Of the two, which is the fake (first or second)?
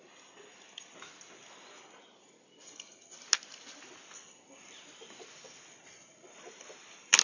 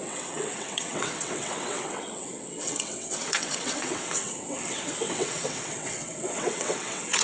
second